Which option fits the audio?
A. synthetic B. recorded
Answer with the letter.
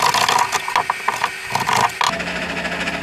B